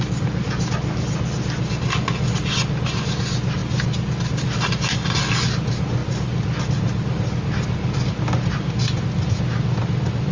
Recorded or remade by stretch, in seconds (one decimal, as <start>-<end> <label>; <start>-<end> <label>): 0.0-10.3 recorded